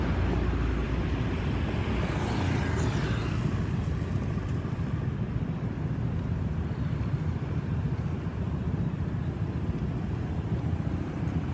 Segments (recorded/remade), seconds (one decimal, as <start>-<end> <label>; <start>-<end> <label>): 0.0-0.8 recorded; 0.8-1.4 remade; 1.4-11.5 recorded